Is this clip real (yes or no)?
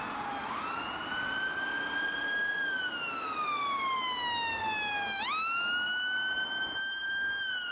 yes